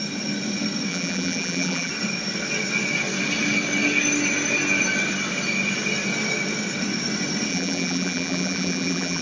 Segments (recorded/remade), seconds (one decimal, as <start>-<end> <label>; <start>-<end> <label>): 0.0-0.9 recorded; 0.9-1.9 remade; 1.9-7.5 recorded; 7.5-9.2 remade